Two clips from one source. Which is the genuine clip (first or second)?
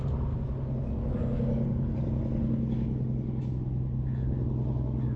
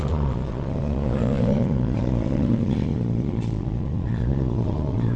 first